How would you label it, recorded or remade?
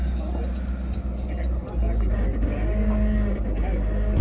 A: recorded